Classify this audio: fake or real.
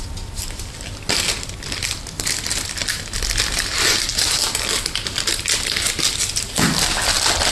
real